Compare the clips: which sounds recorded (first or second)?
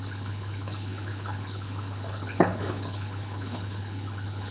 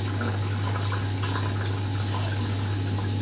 second